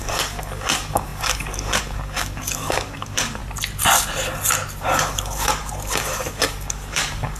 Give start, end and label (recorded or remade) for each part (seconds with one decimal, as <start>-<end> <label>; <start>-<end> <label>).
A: 0.0-3.4 remade; 3.4-4.8 recorded; 4.8-7.4 remade